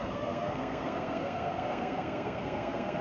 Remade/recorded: remade